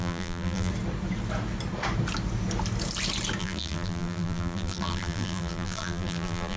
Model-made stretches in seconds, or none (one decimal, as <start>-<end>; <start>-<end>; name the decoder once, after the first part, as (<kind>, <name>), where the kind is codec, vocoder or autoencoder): 0.0-0.7 (vocoder, BigVGAN v2); 3.4-6.6

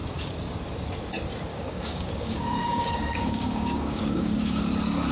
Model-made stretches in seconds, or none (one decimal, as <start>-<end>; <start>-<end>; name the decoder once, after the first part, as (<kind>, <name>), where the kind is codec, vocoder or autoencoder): 1.5-4.6 (codec, DAC)

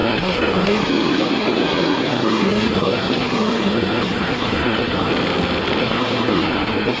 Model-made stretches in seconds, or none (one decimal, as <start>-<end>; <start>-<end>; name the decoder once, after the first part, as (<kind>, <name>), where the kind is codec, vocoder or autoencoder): 0.0-5.1 (codec, SNAC); 5.8-7.0